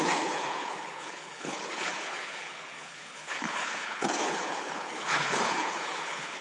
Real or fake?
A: fake